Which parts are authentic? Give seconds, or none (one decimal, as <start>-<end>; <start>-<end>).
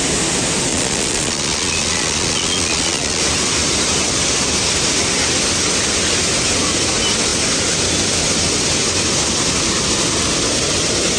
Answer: 0.0-0.7; 3.2-11.2